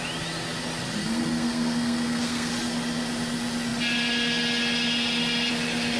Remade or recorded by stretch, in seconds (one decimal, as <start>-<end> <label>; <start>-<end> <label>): 0.0-1.0 recorded; 1.0-2.5 remade; 2.5-6.0 recorded